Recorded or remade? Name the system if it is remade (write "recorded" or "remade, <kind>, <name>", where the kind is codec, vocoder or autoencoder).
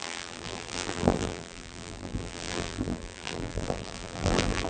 remade, vocoder, BigVGAN v2